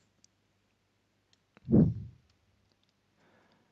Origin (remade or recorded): recorded